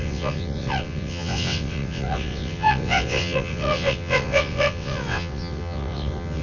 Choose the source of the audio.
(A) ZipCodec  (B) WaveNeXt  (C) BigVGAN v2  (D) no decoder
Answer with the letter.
B